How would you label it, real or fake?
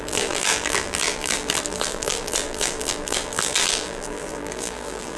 fake